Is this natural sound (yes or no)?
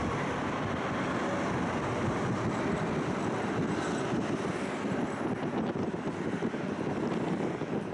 yes